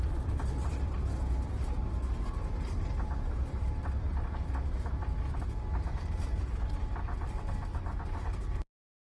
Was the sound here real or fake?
real